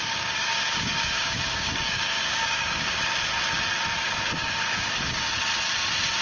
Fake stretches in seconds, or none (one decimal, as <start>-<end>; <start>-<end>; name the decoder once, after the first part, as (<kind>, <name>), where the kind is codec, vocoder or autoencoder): 0.0-3.0 (codec, DAC); 4.0-5.3